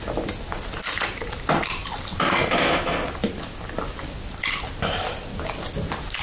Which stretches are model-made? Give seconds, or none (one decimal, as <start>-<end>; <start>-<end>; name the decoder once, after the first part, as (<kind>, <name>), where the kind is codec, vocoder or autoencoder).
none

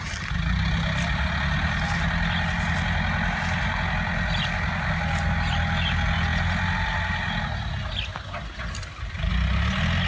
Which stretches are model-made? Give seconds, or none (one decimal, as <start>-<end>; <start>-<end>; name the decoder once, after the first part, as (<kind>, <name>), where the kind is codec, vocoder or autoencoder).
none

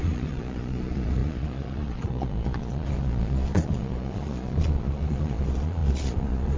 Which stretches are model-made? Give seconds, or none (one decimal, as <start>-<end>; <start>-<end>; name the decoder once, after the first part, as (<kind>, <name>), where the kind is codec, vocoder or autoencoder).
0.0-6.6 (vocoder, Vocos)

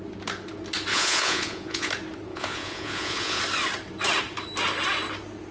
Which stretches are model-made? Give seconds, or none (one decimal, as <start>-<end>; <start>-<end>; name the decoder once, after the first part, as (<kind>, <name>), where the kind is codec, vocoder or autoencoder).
0.9-1.9 (vocoder, Vocos); 2.3-3.4

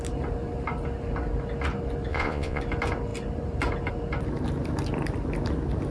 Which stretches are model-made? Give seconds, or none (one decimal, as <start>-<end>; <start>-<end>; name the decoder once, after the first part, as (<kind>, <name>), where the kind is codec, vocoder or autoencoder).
2.1-2.6 (vocoder, Vocos)